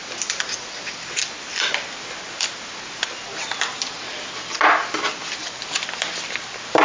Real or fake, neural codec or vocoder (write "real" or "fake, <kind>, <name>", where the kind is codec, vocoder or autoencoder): real